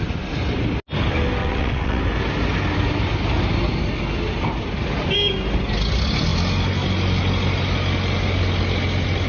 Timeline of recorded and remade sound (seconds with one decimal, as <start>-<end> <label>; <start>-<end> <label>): 0.0-1.4 recorded; 1.4-2.0 remade; 2.0-9.3 recorded